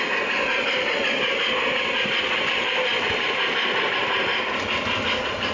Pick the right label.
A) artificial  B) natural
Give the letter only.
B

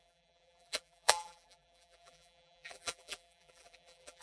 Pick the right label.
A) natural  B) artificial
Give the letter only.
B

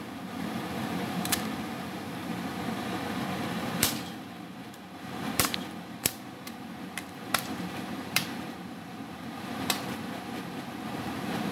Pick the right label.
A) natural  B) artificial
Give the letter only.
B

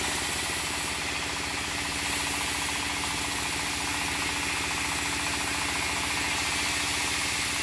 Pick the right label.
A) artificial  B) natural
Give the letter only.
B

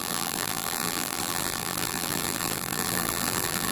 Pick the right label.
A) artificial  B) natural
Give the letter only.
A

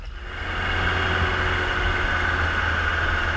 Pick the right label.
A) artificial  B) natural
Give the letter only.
B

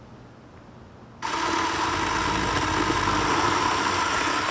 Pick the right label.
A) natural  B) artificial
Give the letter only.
A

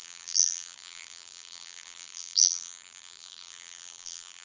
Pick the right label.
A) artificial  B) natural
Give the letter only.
A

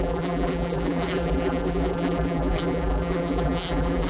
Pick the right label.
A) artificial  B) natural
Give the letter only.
A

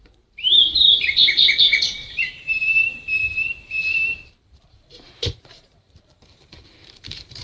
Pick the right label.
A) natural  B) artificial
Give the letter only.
B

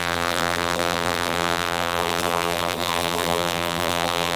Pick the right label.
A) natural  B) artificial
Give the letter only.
B